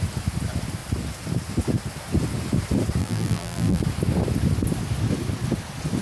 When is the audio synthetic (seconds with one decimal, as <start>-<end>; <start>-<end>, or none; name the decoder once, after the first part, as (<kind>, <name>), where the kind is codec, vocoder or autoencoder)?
3.0-3.8 (vocoder, BigVGAN v2)